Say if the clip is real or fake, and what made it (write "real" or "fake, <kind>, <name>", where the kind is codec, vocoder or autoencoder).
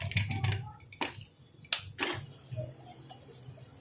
real